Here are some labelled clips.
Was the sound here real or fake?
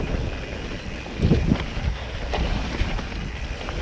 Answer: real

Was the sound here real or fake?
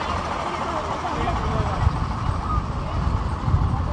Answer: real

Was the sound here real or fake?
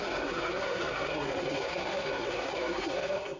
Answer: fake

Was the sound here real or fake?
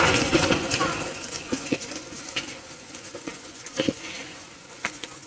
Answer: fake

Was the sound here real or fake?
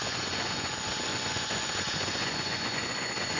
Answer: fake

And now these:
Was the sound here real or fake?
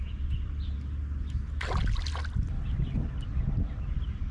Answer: real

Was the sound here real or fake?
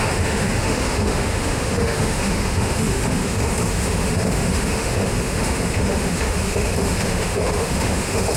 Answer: fake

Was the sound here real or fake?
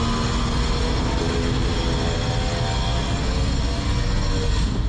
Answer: real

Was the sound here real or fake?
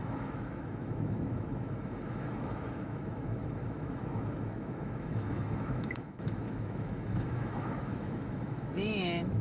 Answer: fake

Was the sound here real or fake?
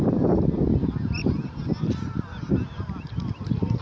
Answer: real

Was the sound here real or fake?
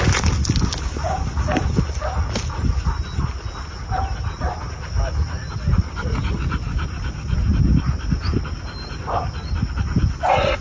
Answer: real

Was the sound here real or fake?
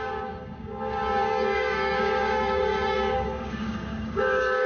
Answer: fake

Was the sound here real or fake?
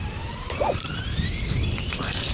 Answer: fake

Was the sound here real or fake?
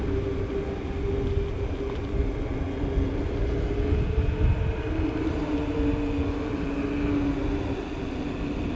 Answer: real